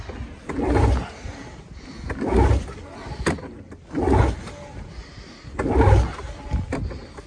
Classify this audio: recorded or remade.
recorded